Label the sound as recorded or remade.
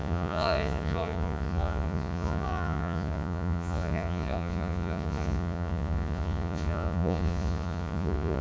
remade